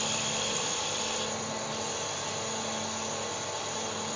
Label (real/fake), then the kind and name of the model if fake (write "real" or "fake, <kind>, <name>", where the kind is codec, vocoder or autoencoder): real